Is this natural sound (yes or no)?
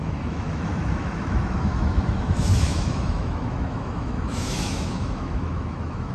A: no